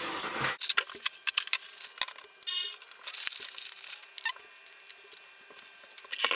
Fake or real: real